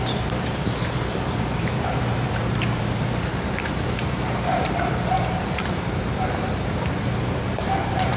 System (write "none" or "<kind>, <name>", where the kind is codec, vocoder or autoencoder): vocoder, BigVGAN v2